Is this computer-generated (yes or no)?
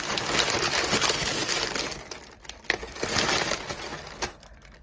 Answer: no